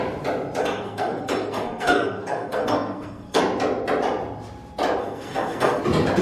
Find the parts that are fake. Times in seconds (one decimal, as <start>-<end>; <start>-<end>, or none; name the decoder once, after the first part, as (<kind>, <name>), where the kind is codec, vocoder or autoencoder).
0.6-3.4 (codec, SNAC); 5.0-5.8